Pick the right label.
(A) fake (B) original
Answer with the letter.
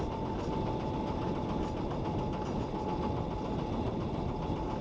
B